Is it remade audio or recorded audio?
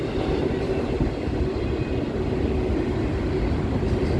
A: recorded